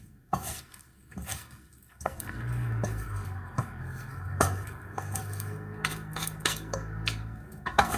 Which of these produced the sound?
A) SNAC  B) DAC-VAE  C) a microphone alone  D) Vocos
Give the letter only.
A